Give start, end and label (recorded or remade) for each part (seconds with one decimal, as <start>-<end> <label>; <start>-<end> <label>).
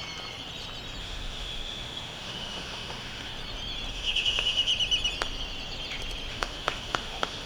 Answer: 0.0-1.0 recorded; 1.0-3.3 remade; 3.3-3.9 recorded; 3.9-4.7 remade; 4.7-6.3 recorded; 6.3-7.5 remade